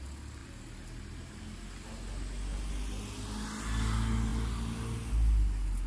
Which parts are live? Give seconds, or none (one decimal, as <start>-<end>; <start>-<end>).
0.0-5.9